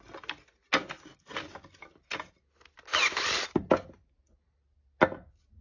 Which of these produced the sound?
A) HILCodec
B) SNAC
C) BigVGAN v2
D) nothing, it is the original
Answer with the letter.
D